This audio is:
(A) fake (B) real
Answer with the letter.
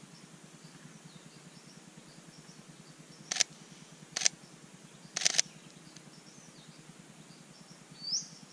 B